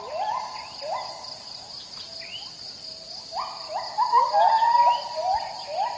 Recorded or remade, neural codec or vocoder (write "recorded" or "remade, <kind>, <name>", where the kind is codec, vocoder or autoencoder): recorded